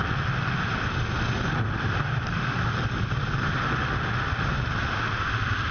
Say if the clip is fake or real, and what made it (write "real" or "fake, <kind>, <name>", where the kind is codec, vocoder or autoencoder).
real